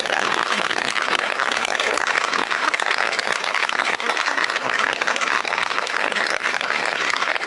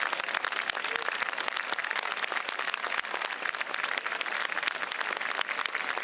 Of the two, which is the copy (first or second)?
first